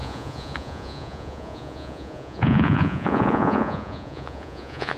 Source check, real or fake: fake